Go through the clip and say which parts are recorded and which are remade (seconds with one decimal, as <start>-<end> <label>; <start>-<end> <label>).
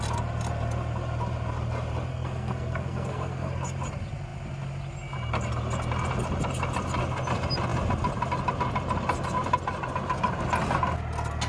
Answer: 0.0-2.1 recorded; 2.1-3.5 remade; 3.5-11.5 recorded